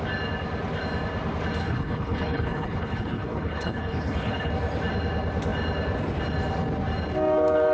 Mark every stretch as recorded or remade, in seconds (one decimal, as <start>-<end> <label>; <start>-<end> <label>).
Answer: 0.0-1.6 recorded; 1.6-4.5 remade; 4.5-7.7 recorded